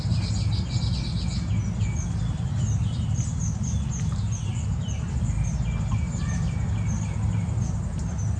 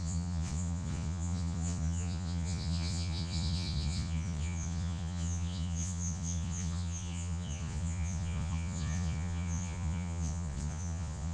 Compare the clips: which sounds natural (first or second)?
first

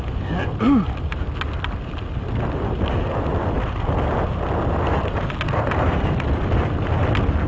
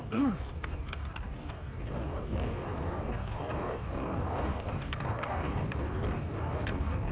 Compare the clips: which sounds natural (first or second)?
first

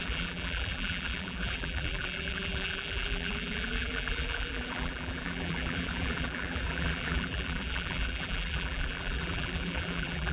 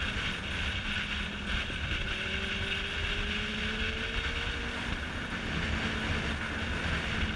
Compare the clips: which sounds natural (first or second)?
second